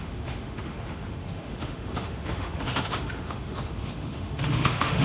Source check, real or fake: fake